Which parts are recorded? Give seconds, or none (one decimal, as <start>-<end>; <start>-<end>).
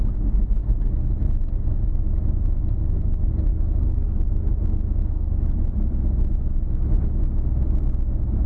0.0-3.5; 4.3-5.0; 5.6-8.5